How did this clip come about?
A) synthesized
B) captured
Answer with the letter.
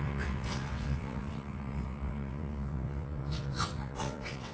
A